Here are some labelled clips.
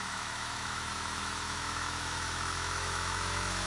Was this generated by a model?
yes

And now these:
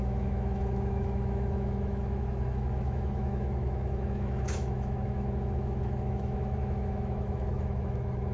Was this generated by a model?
yes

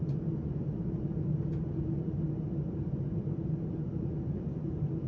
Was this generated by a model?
no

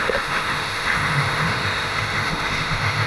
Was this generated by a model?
yes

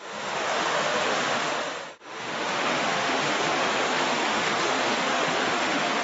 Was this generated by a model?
yes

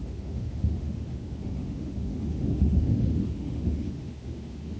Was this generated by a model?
yes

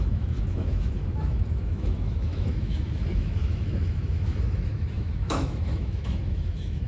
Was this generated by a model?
yes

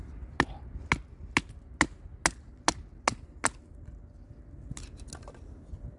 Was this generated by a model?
no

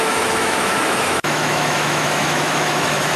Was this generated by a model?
yes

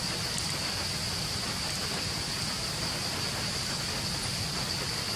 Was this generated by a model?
no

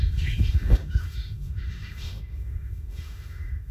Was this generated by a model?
yes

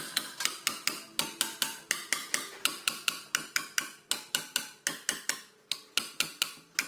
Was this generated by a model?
no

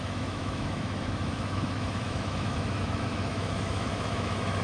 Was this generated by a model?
yes